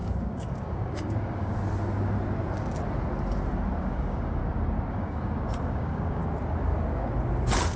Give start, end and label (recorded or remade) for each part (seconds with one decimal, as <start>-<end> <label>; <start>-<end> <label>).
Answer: 0.0-1.6 remade; 1.6-3.8 recorded; 3.8-4.4 remade; 4.4-4.9 recorded; 4.9-6.2 remade; 6.2-7.8 recorded